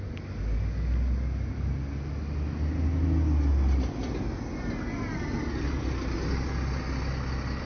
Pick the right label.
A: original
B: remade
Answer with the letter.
A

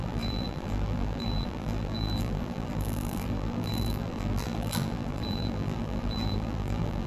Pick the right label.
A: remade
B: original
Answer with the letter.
A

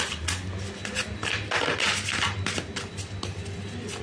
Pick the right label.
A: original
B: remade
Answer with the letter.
A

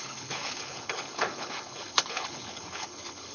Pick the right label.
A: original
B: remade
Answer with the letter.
B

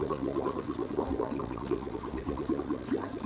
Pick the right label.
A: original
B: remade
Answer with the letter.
B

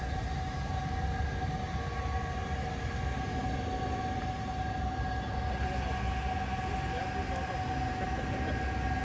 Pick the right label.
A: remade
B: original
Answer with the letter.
B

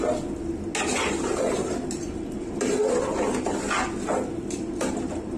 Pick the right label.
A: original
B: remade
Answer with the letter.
A